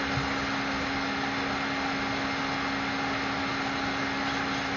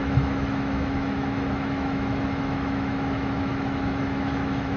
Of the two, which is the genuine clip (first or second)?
first